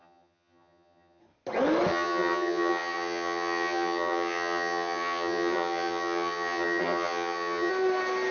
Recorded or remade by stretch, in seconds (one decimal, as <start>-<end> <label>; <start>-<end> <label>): 0.0-1.2 remade; 1.2-1.9 recorded; 1.9-7.7 remade; 7.7-8.3 recorded